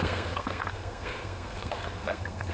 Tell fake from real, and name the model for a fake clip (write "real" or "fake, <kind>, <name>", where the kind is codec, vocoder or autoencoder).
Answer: fake, codec, SNAC